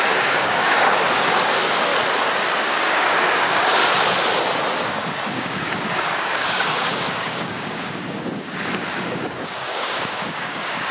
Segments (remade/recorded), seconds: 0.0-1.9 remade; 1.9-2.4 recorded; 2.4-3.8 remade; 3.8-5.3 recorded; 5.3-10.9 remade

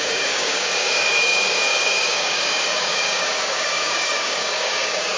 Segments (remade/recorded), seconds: 0.0-5.2 remade

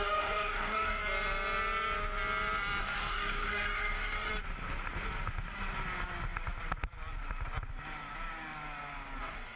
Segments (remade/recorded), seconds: 0.0-1.0 remade; 1.0-2.8 recorded; 2.8-4.3 remade; 4.3-9.2 recorded; 9.2-9.6 remade

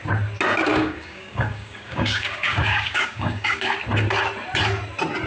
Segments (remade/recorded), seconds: 0.0-0.7 recorded; 0.7-3.7 remade; 3.7-5.3 recorded

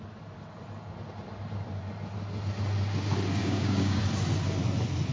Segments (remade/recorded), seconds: 0.0-3.4 recorded; 3.4-4.0 remade; 4.0-5.1 recorded

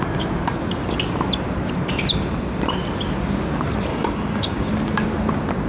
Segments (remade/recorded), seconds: 0.0-3.9 recorded; 3.9-4.7 remade; 4.7-5.7 recorded

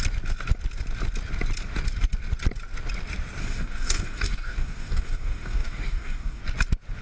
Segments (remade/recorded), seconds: 0.0-3.4 recorded; 3.4-6.4 remade; 6.4-7.0 recorded

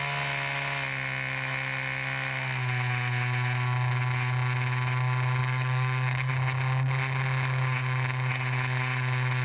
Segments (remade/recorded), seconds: 0.0-5.4 recorded; 5.4-6.3 remade; 6.3-9.4 recorded